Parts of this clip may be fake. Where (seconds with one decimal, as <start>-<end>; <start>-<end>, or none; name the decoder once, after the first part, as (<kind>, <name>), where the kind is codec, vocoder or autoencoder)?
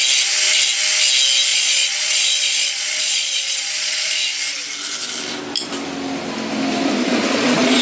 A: 1.5-4.1 (vocoder, Vocos); 7.0-7.8